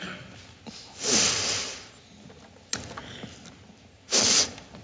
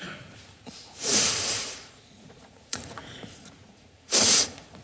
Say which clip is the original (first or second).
first